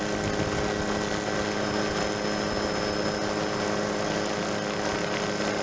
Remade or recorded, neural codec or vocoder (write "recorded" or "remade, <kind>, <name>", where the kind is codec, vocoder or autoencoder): recorded